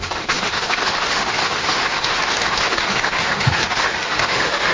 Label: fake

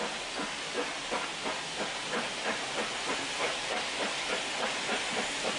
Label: real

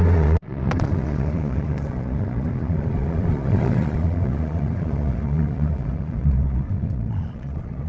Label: fake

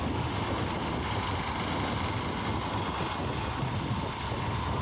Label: real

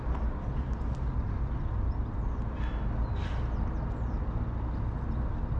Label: real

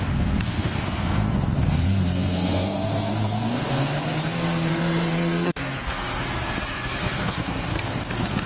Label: fake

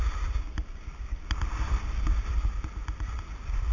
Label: real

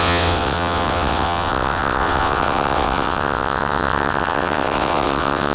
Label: fake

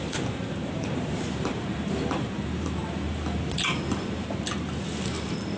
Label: fake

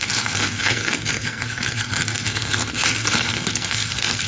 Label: fake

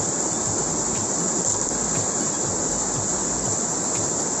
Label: real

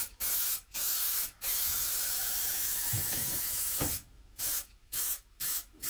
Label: fake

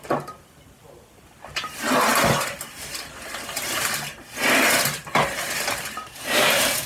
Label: real